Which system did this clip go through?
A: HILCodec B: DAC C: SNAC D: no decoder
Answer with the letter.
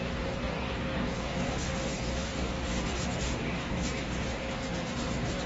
B